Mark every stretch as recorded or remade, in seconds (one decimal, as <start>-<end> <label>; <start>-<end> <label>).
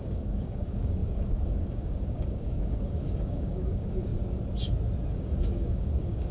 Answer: 0.0-4.1 remade; 4.1-5.1 recorded; 5.1-6.3 remade